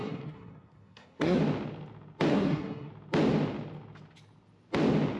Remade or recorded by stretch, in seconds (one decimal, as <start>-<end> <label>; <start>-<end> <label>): 0.0-1.4 remade; 1.4-2.3 recorded; 2.3-2.9 remade; 2.9-5.2 recorded